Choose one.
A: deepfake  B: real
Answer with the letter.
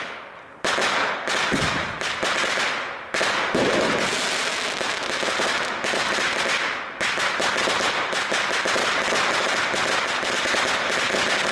B